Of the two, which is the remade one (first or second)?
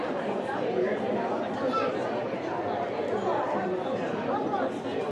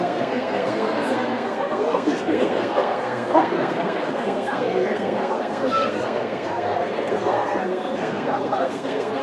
second